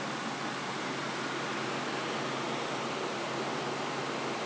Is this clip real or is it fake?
real